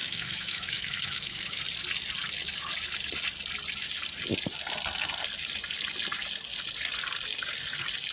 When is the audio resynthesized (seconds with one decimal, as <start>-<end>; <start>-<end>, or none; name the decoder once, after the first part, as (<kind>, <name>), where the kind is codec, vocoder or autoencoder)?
0.0-1.6 (autoencoder, DAC-VAE)

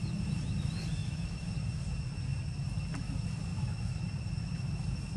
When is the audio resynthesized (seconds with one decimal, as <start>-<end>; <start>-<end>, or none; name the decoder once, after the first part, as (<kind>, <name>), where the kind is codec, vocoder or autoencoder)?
1.0-1.5 (autoencoder, DAC-VAE); 3.5-4.0

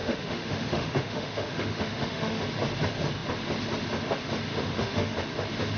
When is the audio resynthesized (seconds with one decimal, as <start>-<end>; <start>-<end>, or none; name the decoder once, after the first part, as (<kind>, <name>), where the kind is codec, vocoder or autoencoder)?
0.0-2.4 (autoencoder, DAC-VAE); 4.5-5.1

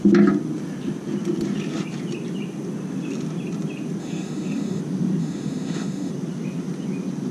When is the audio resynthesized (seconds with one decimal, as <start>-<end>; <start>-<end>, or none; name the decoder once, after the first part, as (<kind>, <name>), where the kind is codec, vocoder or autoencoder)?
4.0-4.8 (autoencoder, DAC-VAE); 5.2-6.1

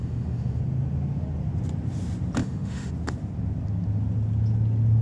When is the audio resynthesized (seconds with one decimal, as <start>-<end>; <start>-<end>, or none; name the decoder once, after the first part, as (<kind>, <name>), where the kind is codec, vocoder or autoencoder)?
0.0-0.6 (autoencoder, DAC-VAE); 2.4-2.9

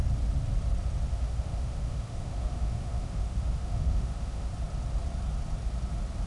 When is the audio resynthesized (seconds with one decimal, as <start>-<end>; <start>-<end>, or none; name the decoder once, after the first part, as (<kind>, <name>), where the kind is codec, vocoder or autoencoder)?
1.1-4.5 (autoencoder, DAC-VAE)